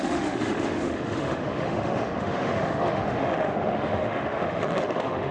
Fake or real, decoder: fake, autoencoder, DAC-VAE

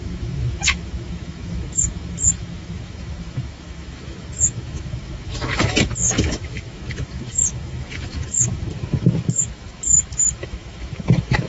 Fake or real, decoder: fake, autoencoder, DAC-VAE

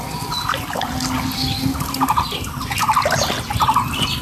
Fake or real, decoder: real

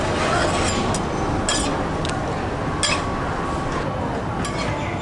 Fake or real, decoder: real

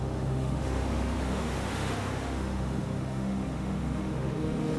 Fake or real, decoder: fake, autoencoder, DAC-VAE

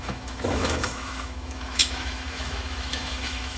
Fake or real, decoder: fake, autoencoder, DAC-VAE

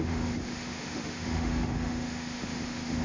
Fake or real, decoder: fake, autoencoder, DAC-VAE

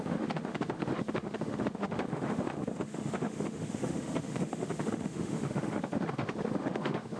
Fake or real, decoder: fake, autoencoder, DAC-VAE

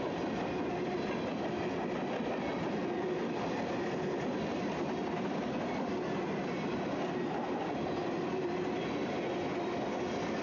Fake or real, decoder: real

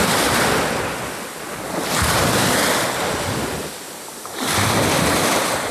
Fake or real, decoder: real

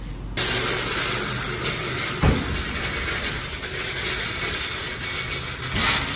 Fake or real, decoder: real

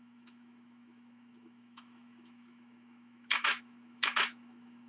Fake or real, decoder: fake, autoencoder, DAC-VAE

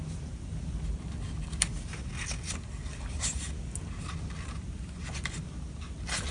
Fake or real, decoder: real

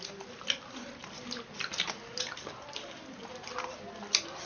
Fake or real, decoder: real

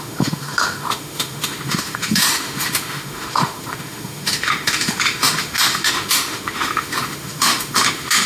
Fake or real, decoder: fake, autoencoder, DAC-VAE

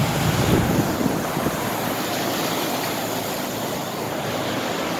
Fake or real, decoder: real